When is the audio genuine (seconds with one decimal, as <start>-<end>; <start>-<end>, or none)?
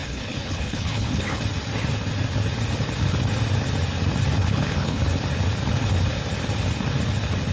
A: 1.4-4.4; 5.0-7.5